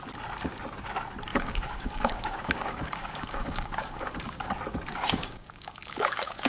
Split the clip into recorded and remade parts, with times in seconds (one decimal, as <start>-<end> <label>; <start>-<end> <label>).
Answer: 0.0-1.3 recorded; 1.3-4.5 remade; 4.5-4.9 recorded; 4.9-6.5 remade